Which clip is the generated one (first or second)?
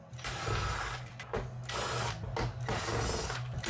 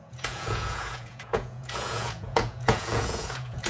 second